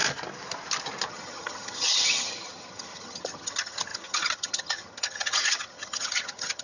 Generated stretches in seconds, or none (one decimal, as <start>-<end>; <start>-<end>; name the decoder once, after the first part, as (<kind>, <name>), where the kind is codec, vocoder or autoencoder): 1.1-6.6 (vocoder, HiFi-GAN)